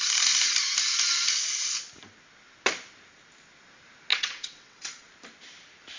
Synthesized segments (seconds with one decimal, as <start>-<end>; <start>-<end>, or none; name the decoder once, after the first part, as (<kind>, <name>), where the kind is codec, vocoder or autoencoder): 4.1-5.0 (vocoder, WaveNeXt)